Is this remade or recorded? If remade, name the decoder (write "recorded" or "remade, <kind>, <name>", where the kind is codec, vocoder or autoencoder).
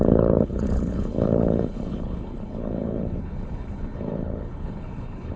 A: remade, codec, HILCodec